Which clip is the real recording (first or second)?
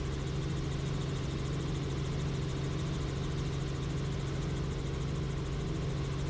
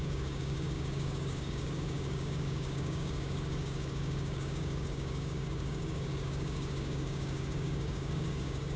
first